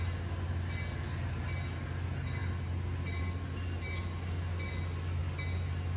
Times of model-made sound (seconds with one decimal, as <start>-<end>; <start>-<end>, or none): none